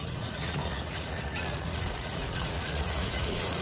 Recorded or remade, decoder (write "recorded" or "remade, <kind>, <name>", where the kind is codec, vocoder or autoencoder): remade, vocoder, Vocos